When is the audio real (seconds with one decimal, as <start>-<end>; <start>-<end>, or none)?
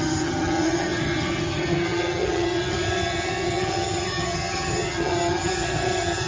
none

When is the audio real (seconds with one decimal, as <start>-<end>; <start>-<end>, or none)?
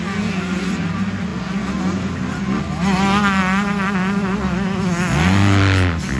0.0-6.2